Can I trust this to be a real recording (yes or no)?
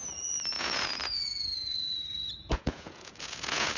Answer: no